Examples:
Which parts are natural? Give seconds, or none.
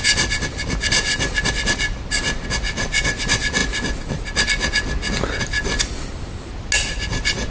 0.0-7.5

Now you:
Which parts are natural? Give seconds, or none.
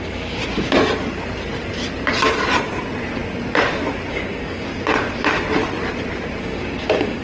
0.4-4.1; 4.7-6.4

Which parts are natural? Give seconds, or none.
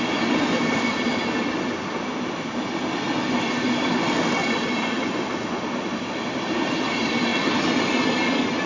0.0-8.7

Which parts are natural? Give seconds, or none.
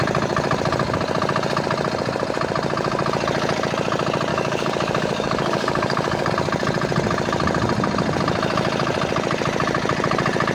0.0-4.3; 6.3-10.5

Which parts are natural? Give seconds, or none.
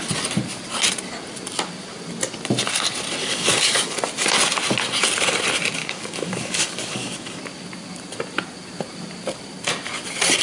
0.0-3.2; 4.0-5.8; 7.4-10.4